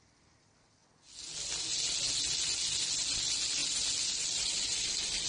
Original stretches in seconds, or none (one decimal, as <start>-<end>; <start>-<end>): 0.0-5.3

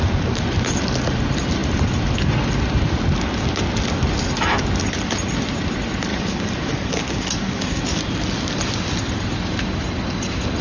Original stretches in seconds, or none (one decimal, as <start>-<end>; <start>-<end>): 0.0-6.1; 8.0-10.6

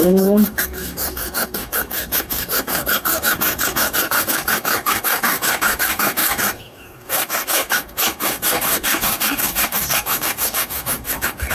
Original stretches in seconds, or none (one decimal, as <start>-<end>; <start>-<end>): none

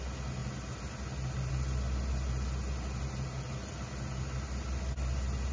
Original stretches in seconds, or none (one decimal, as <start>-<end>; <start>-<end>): 0.0-5.5